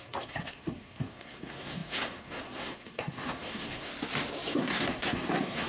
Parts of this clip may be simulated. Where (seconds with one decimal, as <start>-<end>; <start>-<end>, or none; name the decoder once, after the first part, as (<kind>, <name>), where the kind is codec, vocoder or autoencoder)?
0.0-3.9 (codec, SNAC); 4.5-5.7